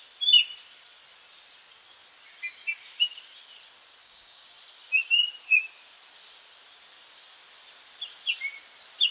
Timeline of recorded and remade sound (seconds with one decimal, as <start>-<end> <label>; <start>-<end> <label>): 0.0-4.0 recorded; 4.0-4.6 remade; 4.6-9.1 recorded